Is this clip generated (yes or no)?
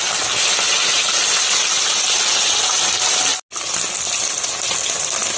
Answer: no